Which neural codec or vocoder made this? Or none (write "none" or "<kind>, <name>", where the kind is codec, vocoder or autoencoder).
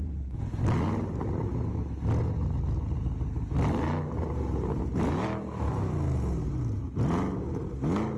none